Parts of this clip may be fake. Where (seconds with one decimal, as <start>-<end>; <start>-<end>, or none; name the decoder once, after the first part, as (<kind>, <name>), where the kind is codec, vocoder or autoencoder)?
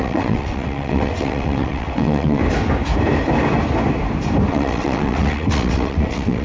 0.0-2.4 (vocoder, WaveNeXt); 4.5-6.4